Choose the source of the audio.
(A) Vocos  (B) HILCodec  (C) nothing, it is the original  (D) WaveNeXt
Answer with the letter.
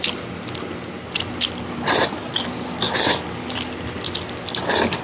C